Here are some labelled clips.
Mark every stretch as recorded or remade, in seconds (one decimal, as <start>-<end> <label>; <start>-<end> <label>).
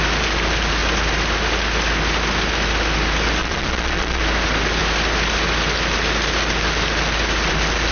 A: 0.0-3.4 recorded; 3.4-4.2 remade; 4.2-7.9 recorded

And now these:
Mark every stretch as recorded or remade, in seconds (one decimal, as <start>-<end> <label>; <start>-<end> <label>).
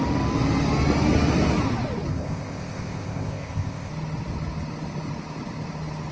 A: 0.0-2.1 recorded; 2.1-3.9 remade; 3.9-6.1 recorded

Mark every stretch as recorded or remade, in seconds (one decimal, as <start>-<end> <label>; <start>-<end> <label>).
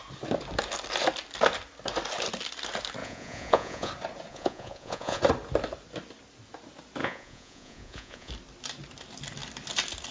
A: 0.0-3.0 recorded; 3.0-3.9 remade; 3.9-4.3 recorded; 4.3-5.2 remade; 5.2-7.0 recorded; 7.0-8.3 remade; 8.3-10.1 recorded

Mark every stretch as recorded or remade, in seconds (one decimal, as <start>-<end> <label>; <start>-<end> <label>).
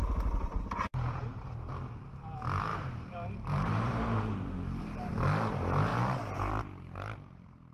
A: 0.0-1.7 remade; 1.7-2.7 recorded; 2.7-5.1 remade; 5.1-7.7 recorded